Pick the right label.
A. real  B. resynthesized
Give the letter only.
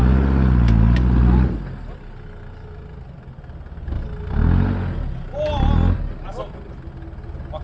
A